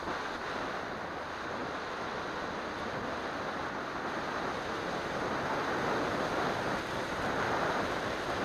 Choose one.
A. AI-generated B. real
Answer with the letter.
B